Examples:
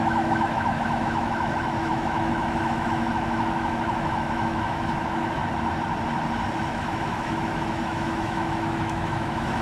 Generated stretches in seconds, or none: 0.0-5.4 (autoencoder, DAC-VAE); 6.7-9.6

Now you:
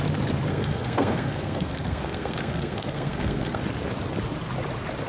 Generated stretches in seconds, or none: 0.5-3.6 (codec, SNAC)

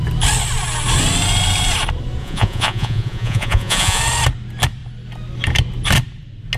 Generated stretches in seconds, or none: 2.2-4.0 (vocoder, Vocos)

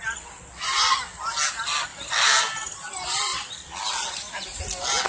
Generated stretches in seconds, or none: none

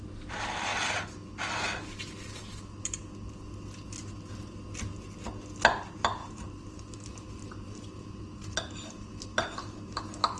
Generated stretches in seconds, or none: 6.2-10.0 (vocoder, BigVGAN v2)

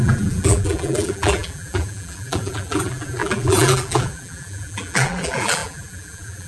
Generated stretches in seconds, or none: 0.0-6.5 (vocoder, BigVGAN v2)